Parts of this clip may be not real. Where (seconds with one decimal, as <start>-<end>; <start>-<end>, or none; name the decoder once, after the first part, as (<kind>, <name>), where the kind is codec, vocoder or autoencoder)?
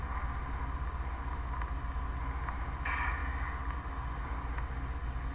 none